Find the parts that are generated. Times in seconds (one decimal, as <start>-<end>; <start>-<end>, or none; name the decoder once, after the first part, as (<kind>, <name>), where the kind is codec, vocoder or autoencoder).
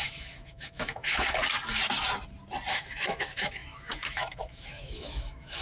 0.0-1.4 (autoencoder, DAC-VAE); 2.7-5.6